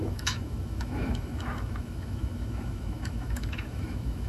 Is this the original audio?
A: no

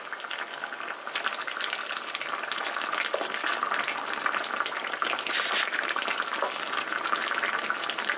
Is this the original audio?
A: yes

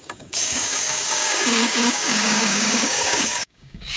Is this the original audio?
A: no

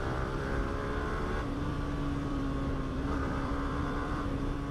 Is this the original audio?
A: no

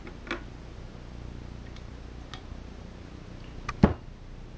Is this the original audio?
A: yes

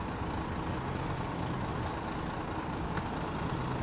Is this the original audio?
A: yes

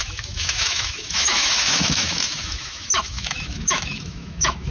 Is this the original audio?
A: no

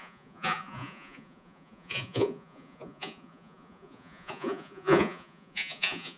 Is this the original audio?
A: no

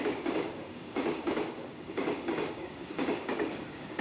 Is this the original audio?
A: no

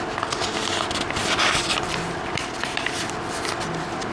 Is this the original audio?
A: no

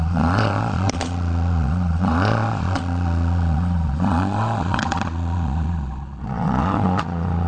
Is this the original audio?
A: no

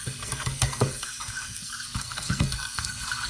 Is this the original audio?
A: no